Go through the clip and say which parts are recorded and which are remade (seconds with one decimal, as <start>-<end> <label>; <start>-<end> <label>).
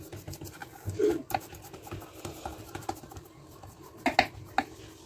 0.0-5.1 recorded